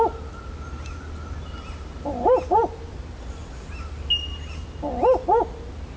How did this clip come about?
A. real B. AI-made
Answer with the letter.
A